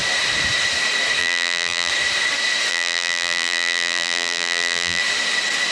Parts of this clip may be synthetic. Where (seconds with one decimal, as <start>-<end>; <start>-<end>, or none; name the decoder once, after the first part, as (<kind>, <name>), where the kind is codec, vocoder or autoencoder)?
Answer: 1.2-1.9 (vocoder, BigVGAN v2); 2.7-5.0